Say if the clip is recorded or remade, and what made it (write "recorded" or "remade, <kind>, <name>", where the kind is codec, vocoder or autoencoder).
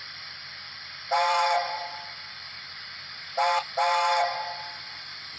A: remade, vocoder, BigVGAN v2